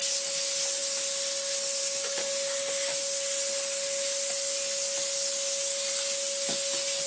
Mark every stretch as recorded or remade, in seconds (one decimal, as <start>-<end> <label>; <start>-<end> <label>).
0.0-7.1 recorded